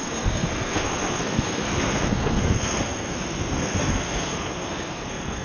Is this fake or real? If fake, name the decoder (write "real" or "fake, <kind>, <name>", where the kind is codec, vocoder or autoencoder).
fake, codec, SNAC